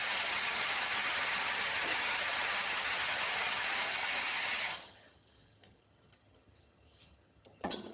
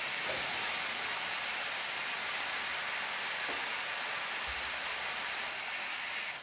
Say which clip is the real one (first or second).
second